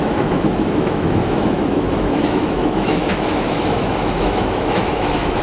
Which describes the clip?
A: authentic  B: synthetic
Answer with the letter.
B